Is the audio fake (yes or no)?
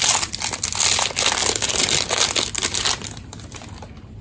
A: no